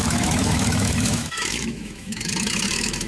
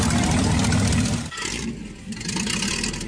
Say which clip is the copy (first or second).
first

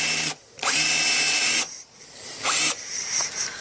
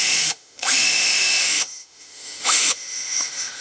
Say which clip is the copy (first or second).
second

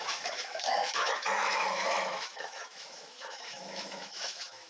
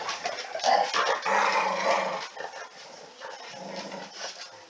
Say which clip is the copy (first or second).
first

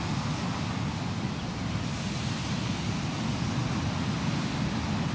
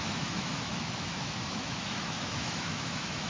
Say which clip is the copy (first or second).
second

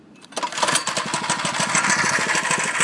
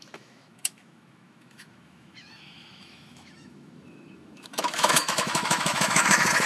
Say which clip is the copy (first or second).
second